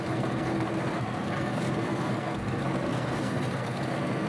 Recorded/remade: remade